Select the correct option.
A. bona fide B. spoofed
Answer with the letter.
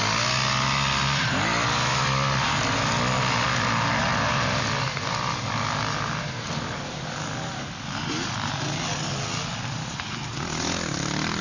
A